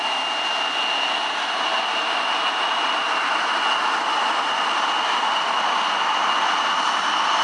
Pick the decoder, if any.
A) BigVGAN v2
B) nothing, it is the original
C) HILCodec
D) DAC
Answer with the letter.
B